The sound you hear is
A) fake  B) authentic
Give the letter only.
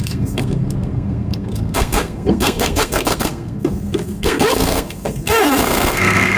A